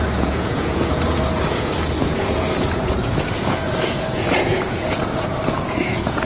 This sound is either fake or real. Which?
fake